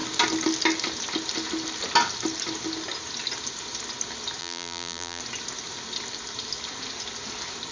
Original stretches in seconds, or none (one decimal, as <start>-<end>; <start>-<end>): 0.0-4.4; 5.2-7.7